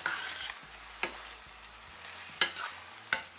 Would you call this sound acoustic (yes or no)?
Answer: yes